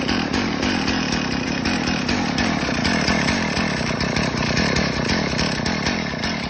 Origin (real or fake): fake